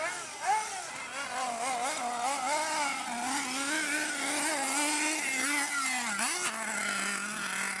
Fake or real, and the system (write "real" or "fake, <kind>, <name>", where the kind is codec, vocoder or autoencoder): real